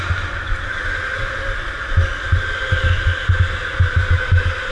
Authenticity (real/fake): real